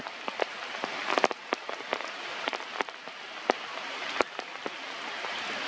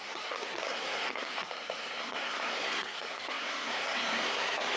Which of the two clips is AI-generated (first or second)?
second